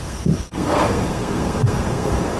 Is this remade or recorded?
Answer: remade